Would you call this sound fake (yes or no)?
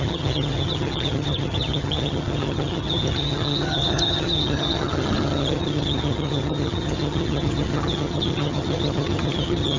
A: yes